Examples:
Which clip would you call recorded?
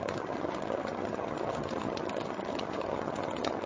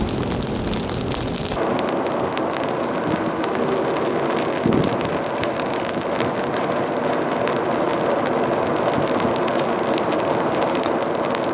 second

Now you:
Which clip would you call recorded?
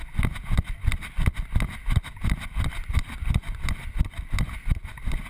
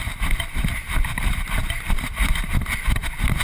first